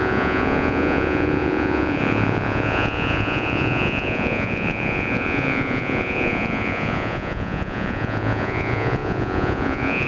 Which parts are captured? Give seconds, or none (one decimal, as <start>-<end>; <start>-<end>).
none